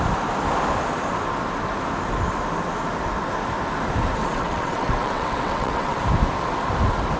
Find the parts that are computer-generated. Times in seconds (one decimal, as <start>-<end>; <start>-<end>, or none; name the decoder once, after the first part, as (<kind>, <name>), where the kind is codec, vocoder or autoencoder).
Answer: 4.2-6.0 (vocoder, WaveNeXt)